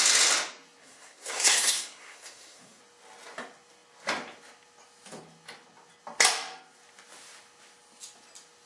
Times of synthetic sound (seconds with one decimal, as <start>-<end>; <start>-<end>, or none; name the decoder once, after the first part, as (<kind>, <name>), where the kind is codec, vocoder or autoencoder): 0.8-2.8 (codec, SNAC)